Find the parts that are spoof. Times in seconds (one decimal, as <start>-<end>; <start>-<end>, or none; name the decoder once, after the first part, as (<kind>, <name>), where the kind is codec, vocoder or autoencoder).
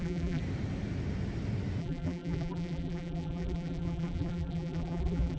0.0-0.4 (vocoder, BigVGAN v2); 1.8-5.4